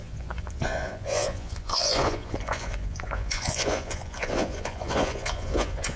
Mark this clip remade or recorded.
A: remade